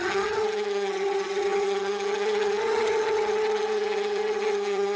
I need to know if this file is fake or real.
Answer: fake